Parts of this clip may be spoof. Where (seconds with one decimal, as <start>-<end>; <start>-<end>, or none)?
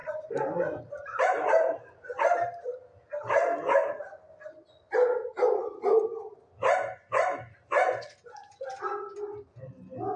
0.0-1.2; 3.8-4.3; 5.6-6.6